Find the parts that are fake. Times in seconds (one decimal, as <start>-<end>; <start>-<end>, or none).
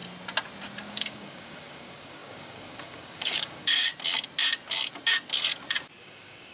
0.9-3.9; 6.0-6.5